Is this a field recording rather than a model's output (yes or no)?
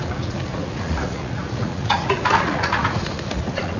no